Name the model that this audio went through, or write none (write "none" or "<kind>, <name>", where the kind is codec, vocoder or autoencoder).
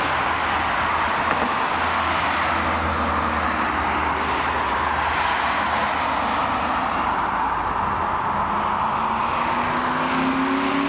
none